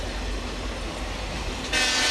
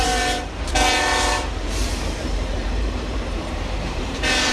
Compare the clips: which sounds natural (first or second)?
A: first